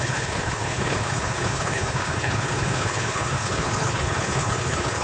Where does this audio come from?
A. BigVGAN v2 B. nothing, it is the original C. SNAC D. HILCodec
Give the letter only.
D